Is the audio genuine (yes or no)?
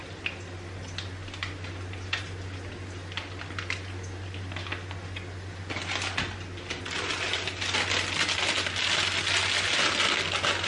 yes